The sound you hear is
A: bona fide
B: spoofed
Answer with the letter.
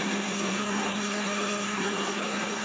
B